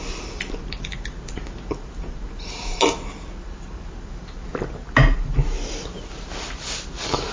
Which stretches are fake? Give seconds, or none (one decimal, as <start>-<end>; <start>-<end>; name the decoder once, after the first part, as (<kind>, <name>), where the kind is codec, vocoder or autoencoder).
none